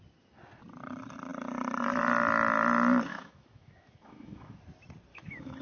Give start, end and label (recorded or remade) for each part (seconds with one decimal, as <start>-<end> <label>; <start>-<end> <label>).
0.0-3.1 recorded; 3.1-4.6 remade; 4.6-5.1 recorded; 5.1-5.6 remade